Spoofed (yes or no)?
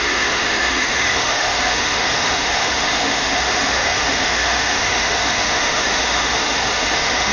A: yes